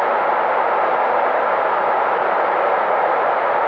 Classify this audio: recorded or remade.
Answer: recorded